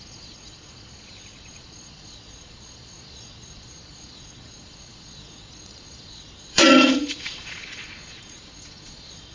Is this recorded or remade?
remade